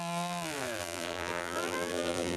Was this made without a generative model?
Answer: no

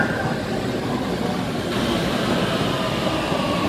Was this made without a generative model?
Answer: yes